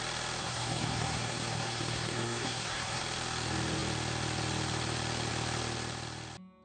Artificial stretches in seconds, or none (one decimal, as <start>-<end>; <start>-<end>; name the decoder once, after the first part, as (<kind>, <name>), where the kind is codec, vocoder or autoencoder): 0.4-3.0 (codec, SNAC)

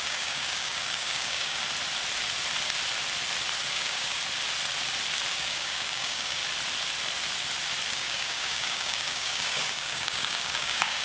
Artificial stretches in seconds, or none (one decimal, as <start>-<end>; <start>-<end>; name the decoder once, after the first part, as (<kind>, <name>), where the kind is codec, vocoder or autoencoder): 0.0-1.6 (codec, DAC); 3.7-4.2; 5.3-6.4; 7.9-11.0